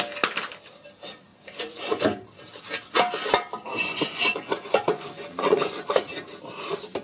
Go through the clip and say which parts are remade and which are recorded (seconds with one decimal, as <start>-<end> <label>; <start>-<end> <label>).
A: 0.0-1.3 recorded; 1.3-2.0 remade; 2.0-3.6 recorded; 3.6-5.9 remade; 5.9-7.0 recorded